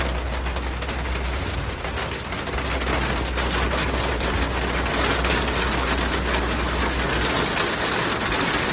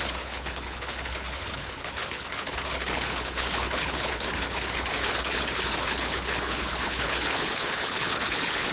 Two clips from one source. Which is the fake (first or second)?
second